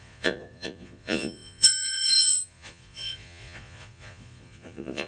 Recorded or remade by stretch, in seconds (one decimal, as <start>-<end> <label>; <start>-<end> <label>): 0.0-5.1 remade

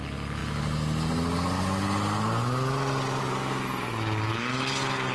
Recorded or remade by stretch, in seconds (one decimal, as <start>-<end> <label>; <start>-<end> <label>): 0.0-5.1 recorded